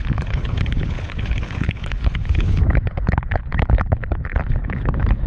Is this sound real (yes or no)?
no